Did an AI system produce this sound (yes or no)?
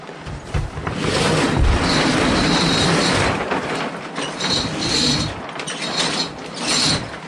yes